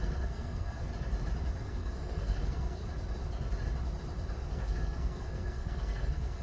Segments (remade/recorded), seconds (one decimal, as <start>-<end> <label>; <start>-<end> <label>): 0.0-0.9 remade; 0.9-1.6 recorded; 1.6-2.8 remade; 2.8-4.5 recorded; 4.5-6.4 remade